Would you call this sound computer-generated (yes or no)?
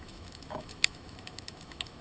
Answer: yes